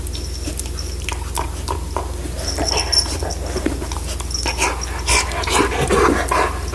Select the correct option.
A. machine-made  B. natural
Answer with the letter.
B